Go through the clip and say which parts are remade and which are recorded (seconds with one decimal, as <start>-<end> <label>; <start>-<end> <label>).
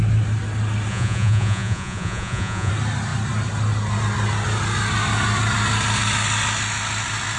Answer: 0.0-0.9 recorded; 0.9-2.7 remade; 2.7-7.4 recorded